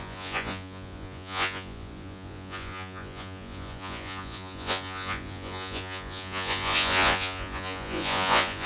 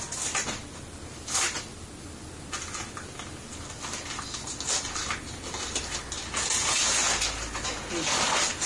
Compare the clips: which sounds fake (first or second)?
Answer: first